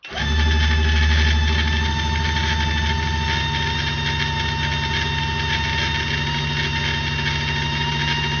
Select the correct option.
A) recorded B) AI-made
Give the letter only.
A